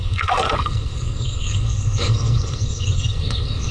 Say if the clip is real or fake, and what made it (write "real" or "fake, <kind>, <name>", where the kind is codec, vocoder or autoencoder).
fake, codec, SNAC